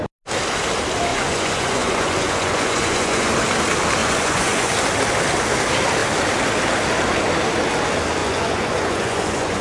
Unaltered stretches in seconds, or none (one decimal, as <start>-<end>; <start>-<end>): 0.0-1.1; 3.3-4.0; 4.7-8.2